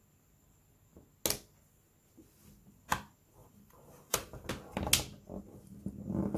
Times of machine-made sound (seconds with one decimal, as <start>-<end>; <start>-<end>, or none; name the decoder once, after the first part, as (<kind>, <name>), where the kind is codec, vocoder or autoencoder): 3.4-4.5 (vocoder, BigVGAN v2)